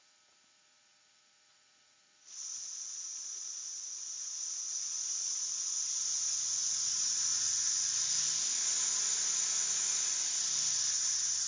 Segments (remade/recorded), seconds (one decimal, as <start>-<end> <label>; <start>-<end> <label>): 0.0-2.4 remade; 2.4-6.7 recorded; 6.7-7.3 remade; 7.3-9.0 recorded; 9.0-10.1 remade; 10.1-10.9 recorded; 10.9-11.5 remade